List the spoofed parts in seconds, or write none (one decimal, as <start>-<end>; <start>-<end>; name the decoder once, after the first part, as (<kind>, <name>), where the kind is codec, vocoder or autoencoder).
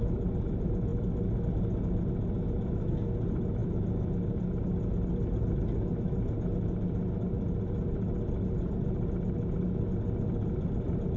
none